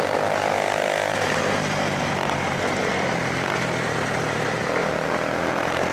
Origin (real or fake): real